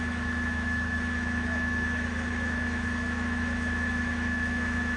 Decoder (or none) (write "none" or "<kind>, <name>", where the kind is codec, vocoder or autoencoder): autoencoder, DAC-VAE